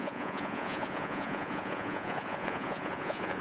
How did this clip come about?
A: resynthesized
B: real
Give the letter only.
A